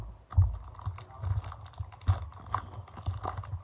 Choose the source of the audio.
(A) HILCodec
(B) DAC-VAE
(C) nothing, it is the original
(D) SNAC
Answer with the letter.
C